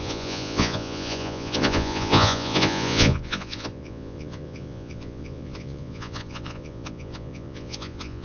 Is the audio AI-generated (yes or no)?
yes